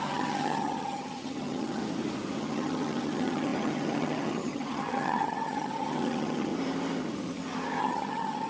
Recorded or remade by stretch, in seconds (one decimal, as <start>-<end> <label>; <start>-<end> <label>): 0.0-1.8 remade; 1.8-2.4 recorded; 2.4-6.5 remade; 6.5-7.8 recorded; 7.8-8.5 remade